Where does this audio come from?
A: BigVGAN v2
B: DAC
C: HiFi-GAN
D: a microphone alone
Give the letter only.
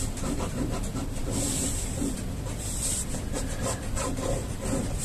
A